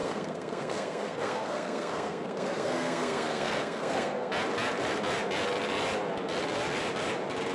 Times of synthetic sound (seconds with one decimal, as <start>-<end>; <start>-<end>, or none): 0.0-4.3